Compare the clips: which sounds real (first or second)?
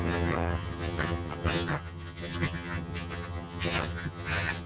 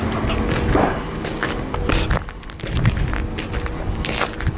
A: second